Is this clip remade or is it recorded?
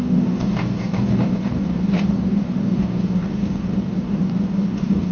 remade